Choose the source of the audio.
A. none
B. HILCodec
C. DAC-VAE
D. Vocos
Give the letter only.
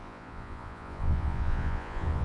D